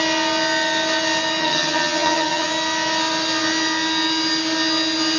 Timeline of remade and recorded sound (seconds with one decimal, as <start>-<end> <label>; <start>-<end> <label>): 0.0-1.4 recorded; 1.4-2.5 remade; 2.5-5.2 recorded